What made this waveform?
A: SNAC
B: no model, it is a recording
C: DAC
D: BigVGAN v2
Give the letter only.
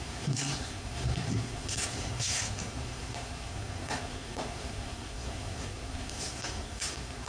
A